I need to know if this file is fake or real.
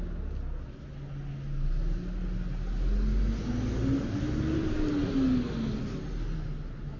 real